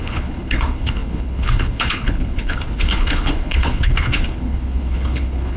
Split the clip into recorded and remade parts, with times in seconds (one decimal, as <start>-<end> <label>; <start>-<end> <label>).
0.0-5.6 remade